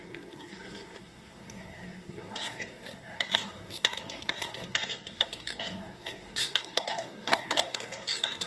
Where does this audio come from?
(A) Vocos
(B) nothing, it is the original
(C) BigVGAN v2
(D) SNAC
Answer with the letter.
D